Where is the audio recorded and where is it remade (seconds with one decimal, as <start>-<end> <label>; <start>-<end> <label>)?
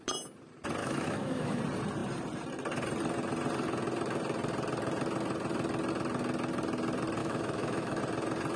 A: 0.0-0.8 recorded; 0.8-1.6 remade; 1.6-7.2 recorded; 7.2-8.0 remade; 8.0-8.6 recorded